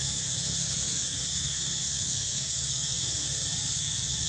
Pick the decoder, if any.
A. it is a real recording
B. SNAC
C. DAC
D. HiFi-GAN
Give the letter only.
B